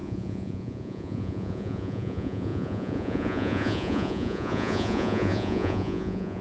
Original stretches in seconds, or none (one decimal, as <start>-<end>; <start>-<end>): none